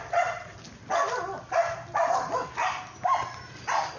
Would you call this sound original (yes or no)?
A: yes